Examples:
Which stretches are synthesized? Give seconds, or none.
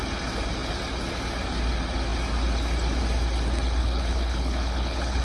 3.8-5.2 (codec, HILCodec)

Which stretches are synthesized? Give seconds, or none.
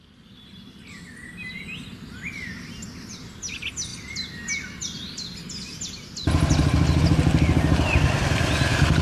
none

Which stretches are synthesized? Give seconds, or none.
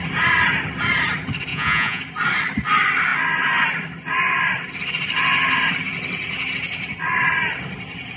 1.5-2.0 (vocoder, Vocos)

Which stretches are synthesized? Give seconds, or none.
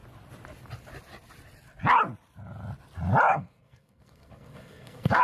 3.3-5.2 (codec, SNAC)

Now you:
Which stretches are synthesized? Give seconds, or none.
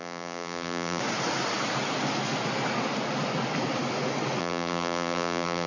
0.0-1.0 (vocoder, BigVGAN v2); 4.4-5.7